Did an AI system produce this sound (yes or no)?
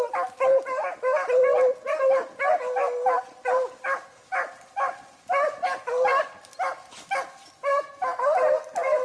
no